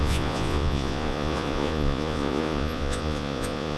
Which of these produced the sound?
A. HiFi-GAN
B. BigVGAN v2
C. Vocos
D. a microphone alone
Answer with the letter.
C